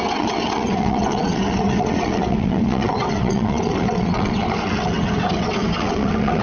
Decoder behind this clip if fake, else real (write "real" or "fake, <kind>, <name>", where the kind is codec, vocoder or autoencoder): fake, vocoder, WaveNeXt